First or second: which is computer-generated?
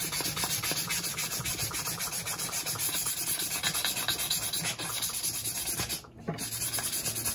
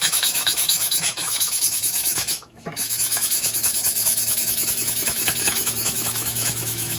second